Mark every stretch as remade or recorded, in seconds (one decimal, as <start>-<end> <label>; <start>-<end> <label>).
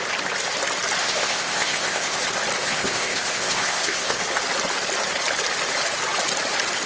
0.0-1.0 recorded; 1.0-2.2 remade; 2.2-2.6 recorded; 2.6-4.2 remade; 4.2-6.9 recorded